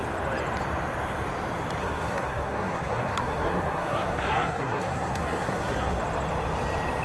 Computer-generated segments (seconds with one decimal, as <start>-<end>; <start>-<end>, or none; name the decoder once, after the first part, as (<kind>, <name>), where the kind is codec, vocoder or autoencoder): 1.8-6.0 (codec, SNAC)